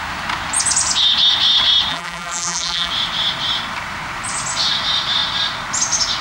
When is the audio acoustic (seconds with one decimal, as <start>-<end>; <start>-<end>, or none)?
0.0-1.9; 2.9-6.2

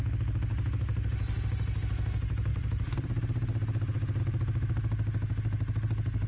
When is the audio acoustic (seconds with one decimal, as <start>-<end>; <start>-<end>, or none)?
0.0-2.5; 4.2-6.3